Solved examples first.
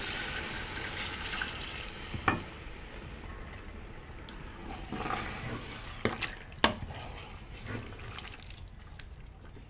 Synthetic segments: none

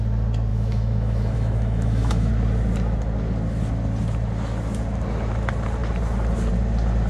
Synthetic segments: 0.5-2.3 (autoencoder, DAC-VAE)

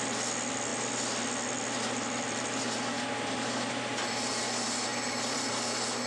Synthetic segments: 0.7-4.4 (vocoder, BigVGAN v2); 4.9-5.5

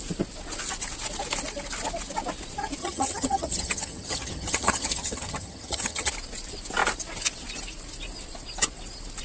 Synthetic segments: 2.8-6.1 (vocoder, HiFi-GAN)

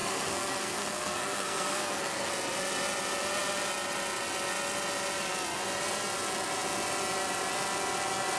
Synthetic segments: 0.0-2.3 (codec, SNAC)

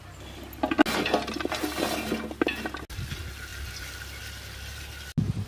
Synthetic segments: none